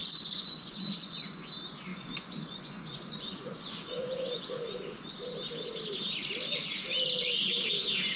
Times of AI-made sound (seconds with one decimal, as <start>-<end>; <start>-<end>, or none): 0.0-1.5; 1.9-5.1